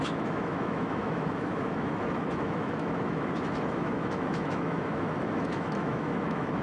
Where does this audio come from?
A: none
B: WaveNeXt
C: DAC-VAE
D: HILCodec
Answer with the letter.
C